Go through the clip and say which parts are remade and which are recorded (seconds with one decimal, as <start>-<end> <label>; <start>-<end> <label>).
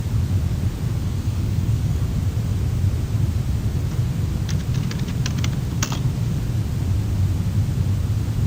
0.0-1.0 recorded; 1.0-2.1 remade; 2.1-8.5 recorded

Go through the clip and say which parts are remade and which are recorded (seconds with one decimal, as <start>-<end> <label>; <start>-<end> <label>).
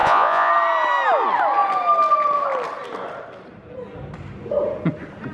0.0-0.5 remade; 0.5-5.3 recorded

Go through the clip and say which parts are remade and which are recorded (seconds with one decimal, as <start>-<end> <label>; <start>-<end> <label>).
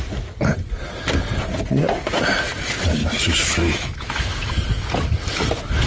0.0-3.0 recorded; 3.0-4.5 remade; 4.5-5.9 recorded